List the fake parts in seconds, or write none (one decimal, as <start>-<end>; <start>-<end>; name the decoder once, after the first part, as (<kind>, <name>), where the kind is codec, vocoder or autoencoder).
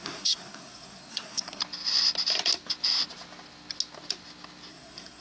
0.0-1.6 (codec, SNAC); 4.7-5.2